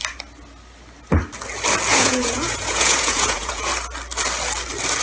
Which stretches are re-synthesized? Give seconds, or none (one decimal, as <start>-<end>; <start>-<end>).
1.9-3.7